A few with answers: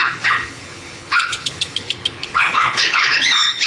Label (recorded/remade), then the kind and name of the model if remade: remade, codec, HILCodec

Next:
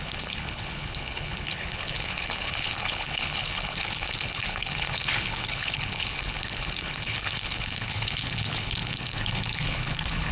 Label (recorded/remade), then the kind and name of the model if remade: remade, codec, HILCodec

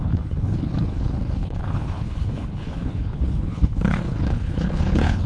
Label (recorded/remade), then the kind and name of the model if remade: remade, codec, HILCodec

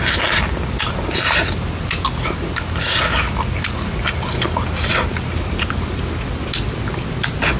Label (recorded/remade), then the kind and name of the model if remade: recorded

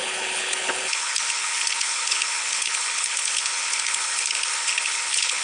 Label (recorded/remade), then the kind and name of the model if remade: remade, codec, HILCodec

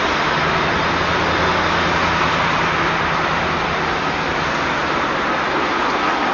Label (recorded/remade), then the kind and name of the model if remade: recorded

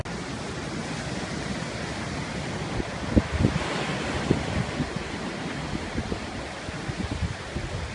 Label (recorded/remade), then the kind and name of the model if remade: recorded